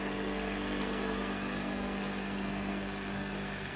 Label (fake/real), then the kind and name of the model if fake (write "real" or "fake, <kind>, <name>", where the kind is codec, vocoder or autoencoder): fake, codec, SNAC